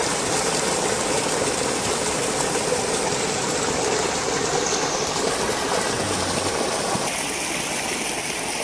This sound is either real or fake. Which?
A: real